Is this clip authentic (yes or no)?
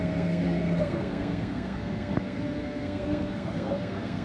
no